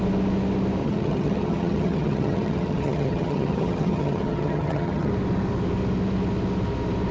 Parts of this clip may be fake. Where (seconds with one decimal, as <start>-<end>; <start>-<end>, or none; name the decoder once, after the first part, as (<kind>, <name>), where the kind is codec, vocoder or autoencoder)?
0.8-5.1 (vocoder, HiFi-GAN)